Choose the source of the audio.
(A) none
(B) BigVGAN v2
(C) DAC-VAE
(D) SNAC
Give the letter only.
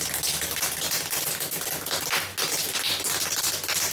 A